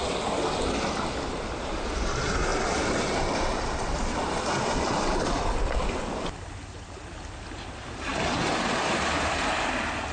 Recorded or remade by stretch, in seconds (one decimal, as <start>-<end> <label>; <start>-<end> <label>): 0.0-2.5 recorded; 2.5-3.5 remade; 3.5-10.1 recorded